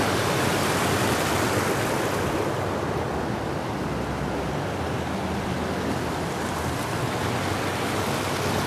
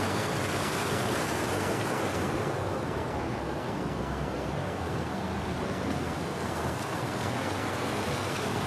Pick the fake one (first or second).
second